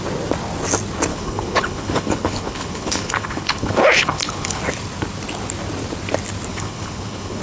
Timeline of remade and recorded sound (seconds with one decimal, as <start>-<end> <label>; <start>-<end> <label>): 0.0-1.1 recorded; 1.1-4.6 remade; 4.6-6.5 recorded; 6.5-7.4 remade